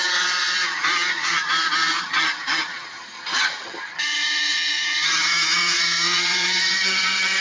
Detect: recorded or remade remade